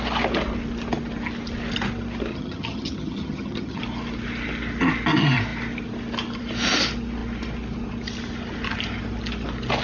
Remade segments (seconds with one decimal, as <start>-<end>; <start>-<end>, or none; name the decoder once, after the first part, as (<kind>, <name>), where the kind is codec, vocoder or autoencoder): 2.3-3.8 (vocoder, HiFi-GAN)